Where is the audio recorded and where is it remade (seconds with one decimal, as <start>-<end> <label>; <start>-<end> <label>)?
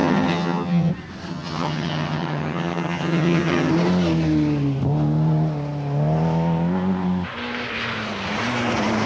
0.0-0.9 remade; 0.9-1.3 recorded; 1.3-3.7 remade; 3.7-9.1 recorded